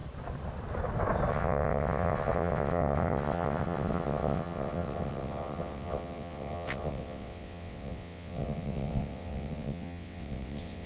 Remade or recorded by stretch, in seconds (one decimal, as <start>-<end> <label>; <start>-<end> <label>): 0.0-1.3 recorded; 1.3-10.9 remade